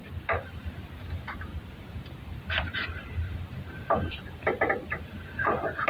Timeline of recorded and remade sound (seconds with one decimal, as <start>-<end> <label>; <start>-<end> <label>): 0.0-0.8 remade; 0.8-1.5 recorded; 1.5-5.0 remade; 5.0-5.9 recorded